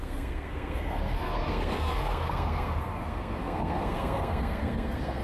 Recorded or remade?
remade